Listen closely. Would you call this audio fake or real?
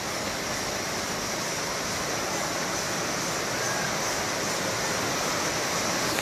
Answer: real